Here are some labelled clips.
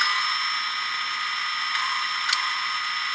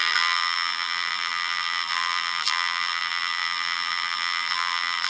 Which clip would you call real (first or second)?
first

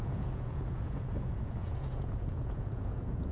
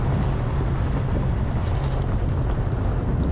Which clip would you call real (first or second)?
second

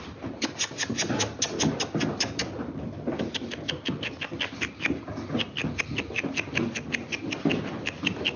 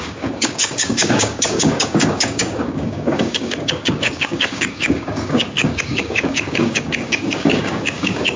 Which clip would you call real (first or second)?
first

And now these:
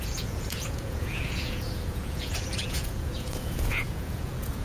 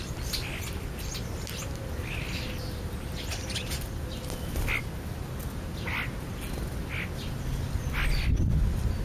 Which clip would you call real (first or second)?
second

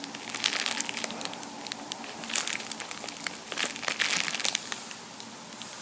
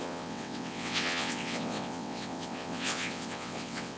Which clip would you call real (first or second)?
first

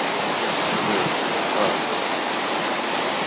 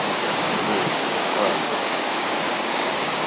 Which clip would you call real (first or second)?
first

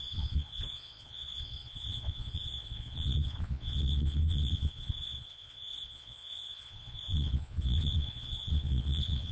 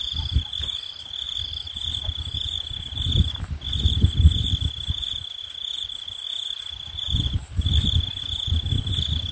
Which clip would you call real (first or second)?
second